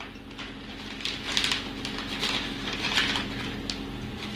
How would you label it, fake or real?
real